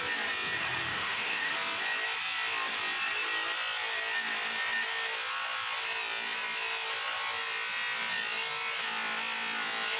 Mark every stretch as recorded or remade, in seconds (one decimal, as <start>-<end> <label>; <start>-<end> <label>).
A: 0.0-0.9 recorded; 0.9-1.5 remade; 1.5-10.0 recorded